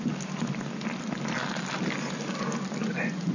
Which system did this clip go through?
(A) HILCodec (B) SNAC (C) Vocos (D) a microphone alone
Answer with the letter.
D